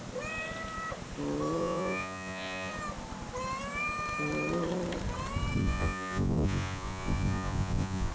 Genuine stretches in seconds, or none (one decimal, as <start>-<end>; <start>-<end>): 0.0-1.6; 2.7-5.6